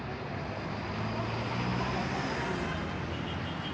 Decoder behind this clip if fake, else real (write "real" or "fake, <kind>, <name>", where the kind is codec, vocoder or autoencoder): real